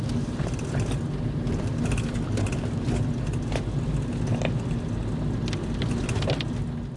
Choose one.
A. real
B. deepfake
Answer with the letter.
A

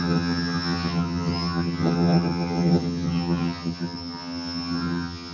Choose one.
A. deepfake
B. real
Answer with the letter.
A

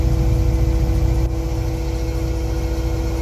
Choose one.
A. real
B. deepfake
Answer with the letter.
A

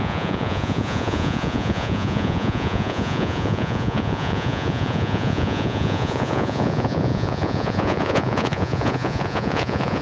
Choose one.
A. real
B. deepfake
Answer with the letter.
B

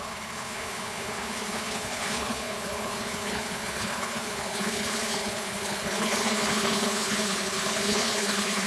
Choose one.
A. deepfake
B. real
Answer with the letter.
A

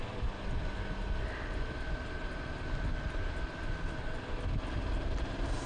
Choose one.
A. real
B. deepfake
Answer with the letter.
A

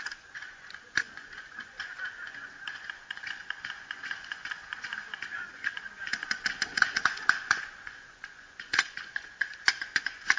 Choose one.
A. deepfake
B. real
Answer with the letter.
A